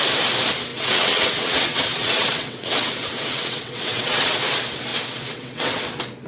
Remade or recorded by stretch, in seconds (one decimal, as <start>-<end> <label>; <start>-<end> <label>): 0.0-0.7 recorded; 0.7-4.4 remade; 4.4-4.9 recorded; 4.9-5.8 remade; 5.8-6.3 recorded